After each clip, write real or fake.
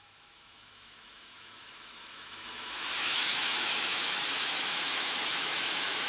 fake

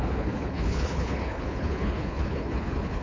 fake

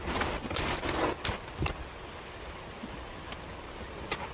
real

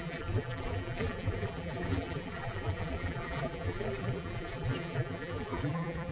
fake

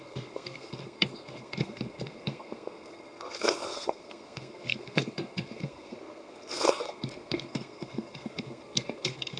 fake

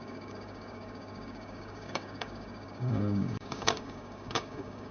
fake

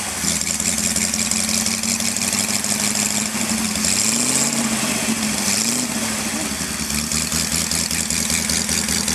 real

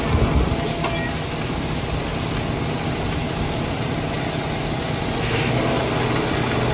real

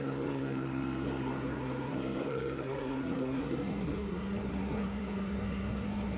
fake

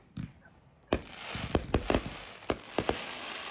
real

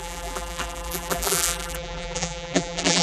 fake